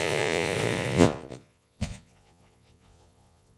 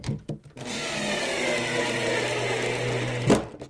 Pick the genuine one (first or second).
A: second